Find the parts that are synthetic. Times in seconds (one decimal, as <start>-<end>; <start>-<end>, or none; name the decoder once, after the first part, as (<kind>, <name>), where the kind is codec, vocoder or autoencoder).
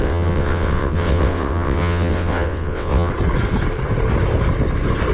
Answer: 0.0-3.1 (vocoder, WaveNeXt)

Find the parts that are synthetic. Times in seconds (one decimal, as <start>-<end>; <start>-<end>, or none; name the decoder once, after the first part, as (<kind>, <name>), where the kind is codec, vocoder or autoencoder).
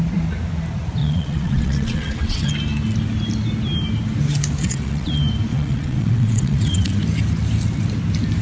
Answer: 1.0-2.5 (vocoder, WaveNeXt); 4.6-5.1; 5.5-7.0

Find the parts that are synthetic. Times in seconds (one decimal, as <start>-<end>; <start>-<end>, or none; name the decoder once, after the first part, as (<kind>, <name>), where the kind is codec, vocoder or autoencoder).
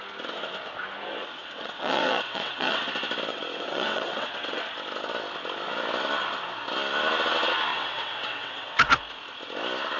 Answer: 1.4-2.8 (vocoder, WaveNeXt); 3.3-4.6; 7.7-9.0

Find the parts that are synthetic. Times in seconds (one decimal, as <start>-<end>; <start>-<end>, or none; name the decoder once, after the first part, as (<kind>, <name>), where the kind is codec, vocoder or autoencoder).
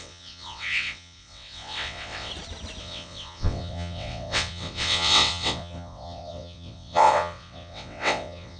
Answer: 0.0-2.3 (vocoder, WaveNeXt); 2.8-8.6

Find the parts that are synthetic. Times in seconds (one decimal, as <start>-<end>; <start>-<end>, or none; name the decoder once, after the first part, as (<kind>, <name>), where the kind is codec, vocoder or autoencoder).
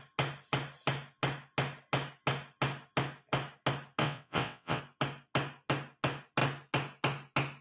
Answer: 4.0-4.8 (vocoder, WaveNeXt)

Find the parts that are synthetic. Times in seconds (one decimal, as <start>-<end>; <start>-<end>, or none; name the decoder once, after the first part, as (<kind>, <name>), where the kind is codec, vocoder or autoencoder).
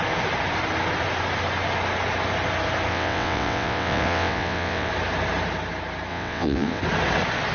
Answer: 2.9-4.9 (vocoder, WaveNeXt); 6.1-6.8